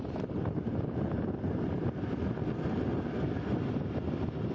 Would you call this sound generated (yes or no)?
no